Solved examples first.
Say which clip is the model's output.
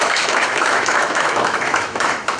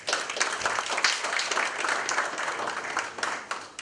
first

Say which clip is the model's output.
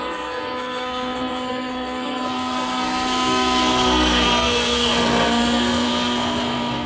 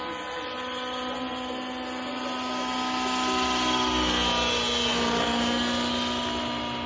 first